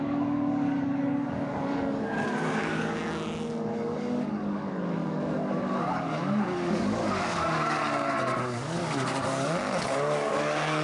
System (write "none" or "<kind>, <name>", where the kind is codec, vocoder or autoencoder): codec, DAC